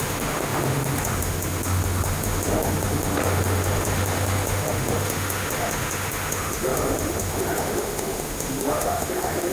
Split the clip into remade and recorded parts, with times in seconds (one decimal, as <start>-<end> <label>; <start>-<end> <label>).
0.0-9.5 remade